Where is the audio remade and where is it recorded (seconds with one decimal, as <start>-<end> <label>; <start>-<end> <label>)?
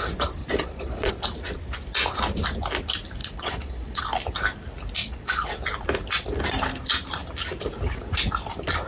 0.0-0.4 recorded; 0.4-1.1 remade; 1.1-3.2 recorded; 3.2-4.0 remade; 4.0-5.0 recorded; 5.0-5.6 remade; 5.6-8.9 recorded